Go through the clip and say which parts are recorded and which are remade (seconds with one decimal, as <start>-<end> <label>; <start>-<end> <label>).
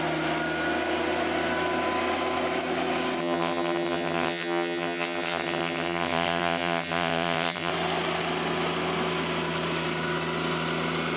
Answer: 0.0-3.2 recorded; 3.2-7.7 remade; 7.7-11.2 recorded